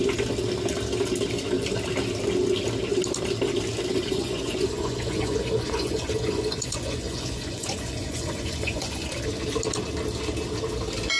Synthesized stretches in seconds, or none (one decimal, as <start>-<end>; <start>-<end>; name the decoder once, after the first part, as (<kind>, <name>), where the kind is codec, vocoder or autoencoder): 3.9-9.1 (vocoder, Vocos)